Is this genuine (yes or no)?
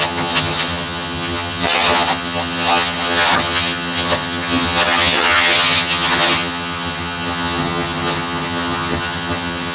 no